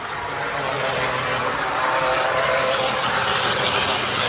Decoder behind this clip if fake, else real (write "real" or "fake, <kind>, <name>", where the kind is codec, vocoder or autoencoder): real